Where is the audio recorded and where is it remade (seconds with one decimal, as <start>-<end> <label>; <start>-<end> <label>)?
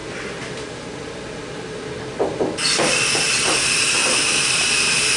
0.0-3.1 remade; 3.1-4.0 recorded; 4.0-5.2 remade